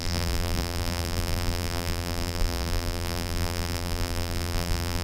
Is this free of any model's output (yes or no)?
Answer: no